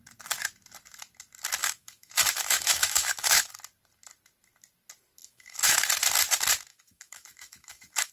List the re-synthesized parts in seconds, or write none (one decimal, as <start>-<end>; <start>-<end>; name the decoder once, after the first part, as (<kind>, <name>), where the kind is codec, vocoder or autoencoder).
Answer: 1.6-3.5 (autoencoder, DAC-VAE); 5.2-5.9; 6.7-8.1